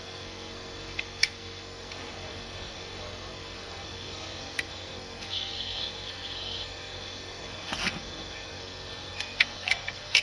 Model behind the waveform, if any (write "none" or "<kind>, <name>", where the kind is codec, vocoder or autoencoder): codec, SNAC